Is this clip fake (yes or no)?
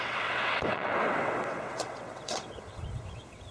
yes